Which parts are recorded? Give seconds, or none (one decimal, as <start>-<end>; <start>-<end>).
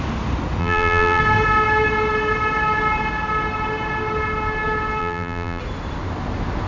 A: 0.0-0.6; 1.2-5.0; 5.6-6.7